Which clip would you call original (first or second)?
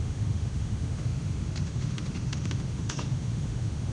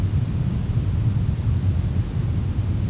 second